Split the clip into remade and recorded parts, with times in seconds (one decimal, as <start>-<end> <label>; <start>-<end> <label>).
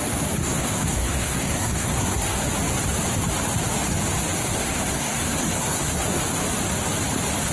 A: 0.0-0.4 recorded; 0.4-2.4 remade; 2.4-4.5 recorded; 4.5-6.2 remade; 6.2-7.5 recorded